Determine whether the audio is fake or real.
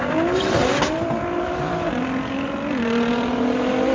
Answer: real